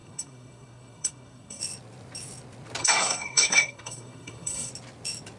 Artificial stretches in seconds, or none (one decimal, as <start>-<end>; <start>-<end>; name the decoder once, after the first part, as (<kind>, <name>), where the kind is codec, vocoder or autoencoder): 0.0-1.6 (codec, SNAC); 2.8-4.7